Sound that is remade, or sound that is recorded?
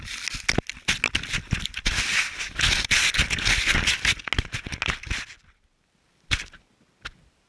recorded